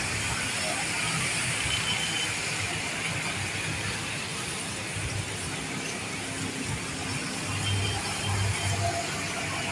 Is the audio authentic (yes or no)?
yes